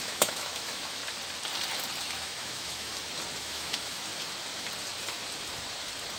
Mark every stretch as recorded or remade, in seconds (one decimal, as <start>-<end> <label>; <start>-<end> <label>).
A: 0.0-1.0 remade; 1.0-2.0 recorded; 2.0-2.9 remade; 2.9-3.4 recorded; 3.4-4.1 remade; 4.1-6.2 recorded